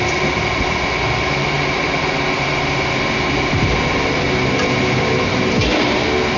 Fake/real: real